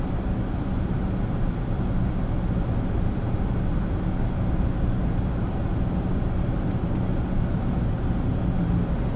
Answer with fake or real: real